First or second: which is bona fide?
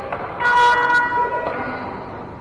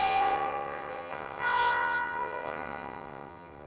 first